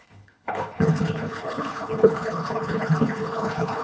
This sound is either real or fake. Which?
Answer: fake